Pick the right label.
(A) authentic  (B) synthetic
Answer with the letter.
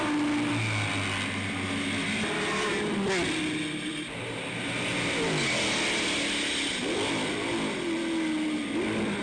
A